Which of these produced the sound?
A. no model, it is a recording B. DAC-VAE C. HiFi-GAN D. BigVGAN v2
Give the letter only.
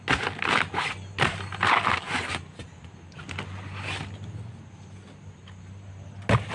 A